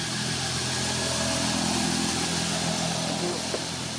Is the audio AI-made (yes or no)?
no